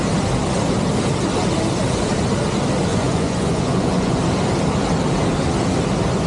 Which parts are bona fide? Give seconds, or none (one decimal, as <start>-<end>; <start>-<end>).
0.0-2.9; 4.2-6.3